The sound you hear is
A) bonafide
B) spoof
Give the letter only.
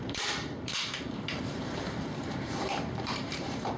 B